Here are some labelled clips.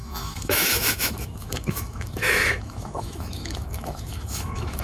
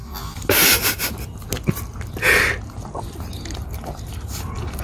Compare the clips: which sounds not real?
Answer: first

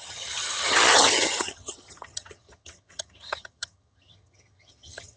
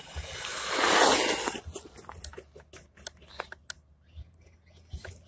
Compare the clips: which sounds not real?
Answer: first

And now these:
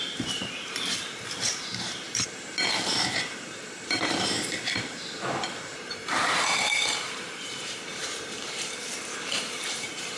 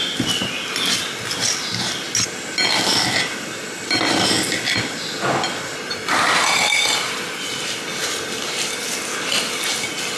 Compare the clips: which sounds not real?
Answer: first